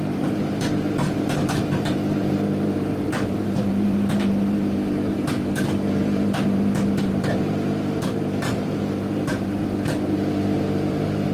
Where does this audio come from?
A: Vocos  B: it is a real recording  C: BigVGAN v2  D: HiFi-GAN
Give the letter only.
C